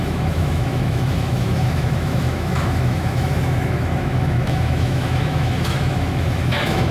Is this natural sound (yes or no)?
no